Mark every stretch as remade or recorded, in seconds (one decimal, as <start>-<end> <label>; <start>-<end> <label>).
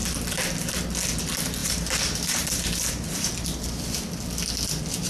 0.0-1.6 recorded; 1.6-3.3 remade; 3.3-5.1 recorded